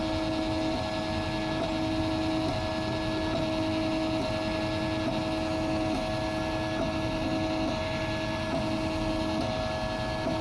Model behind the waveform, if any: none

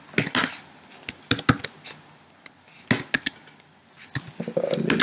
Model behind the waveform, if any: none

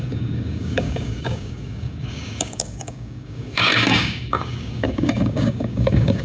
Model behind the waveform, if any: codec, DAC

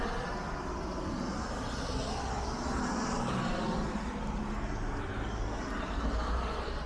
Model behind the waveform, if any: none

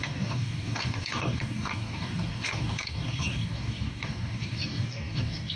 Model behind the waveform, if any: codec, DAC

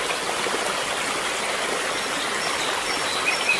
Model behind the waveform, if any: vocoder, BigVGAN v2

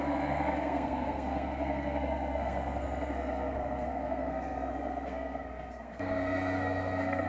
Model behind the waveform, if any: codec, SNAC